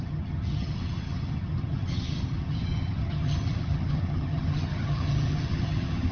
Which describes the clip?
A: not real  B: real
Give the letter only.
A